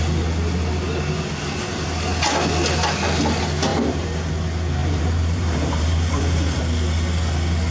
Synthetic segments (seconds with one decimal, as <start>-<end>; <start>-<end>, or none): 3.7-4.3; 4.8-6.6